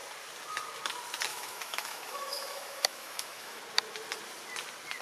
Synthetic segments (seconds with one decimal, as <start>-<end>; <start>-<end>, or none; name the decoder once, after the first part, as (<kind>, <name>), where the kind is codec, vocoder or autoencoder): 1.3-3.6 (autoencoder, DAC-VAE)